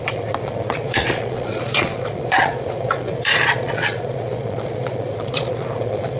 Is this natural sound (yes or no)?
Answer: no